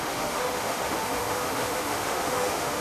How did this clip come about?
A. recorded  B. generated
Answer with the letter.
B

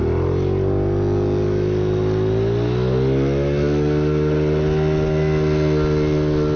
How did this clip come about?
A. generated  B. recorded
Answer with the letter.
B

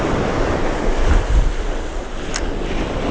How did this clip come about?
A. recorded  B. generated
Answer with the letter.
A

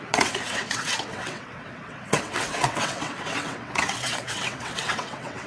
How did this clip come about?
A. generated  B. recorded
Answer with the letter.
A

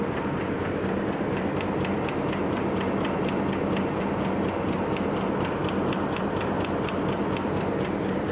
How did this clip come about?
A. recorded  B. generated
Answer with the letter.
A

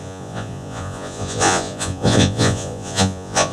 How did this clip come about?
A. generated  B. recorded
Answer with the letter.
A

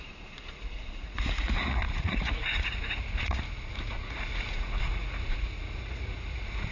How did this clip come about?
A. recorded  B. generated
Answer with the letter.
B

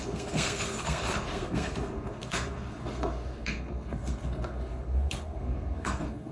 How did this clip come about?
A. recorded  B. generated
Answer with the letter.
B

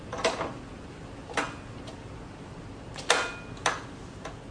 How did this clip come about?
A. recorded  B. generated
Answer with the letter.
A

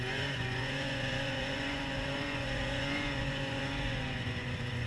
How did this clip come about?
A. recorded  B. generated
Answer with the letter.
B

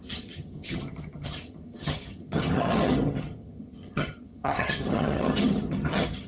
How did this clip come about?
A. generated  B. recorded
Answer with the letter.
A